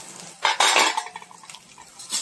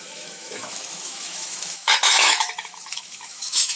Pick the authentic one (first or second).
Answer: first